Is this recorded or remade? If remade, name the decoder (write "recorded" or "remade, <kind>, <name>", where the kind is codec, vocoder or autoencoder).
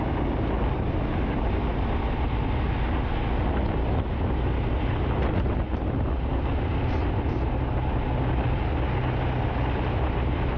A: recorded